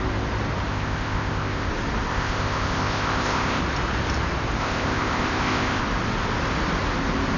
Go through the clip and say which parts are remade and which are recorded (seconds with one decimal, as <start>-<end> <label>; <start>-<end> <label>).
0.0-0.7 recorded; 0.7-1.7 remade; 1.7-2.1 recorded; 2.1-3.6 remade; 3.6-4.6 recorded; 4.6-5.8 remade; 5.8-7.4 recorded